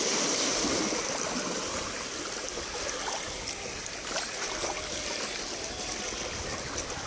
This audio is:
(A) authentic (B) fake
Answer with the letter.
A